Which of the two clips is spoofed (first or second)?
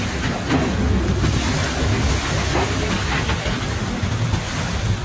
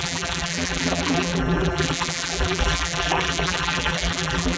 second